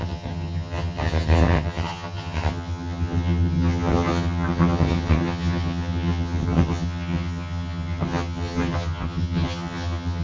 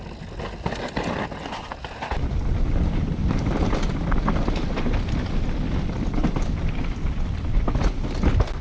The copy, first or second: first